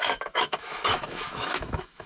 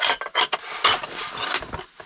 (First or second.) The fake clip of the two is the first